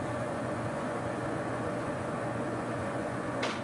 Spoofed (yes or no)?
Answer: yes